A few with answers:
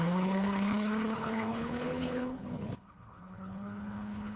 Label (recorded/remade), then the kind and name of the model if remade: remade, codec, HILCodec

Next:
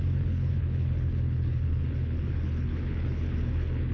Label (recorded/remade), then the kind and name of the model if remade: remade, codec, HILCodec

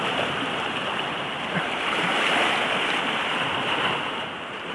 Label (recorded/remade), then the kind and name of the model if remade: recorded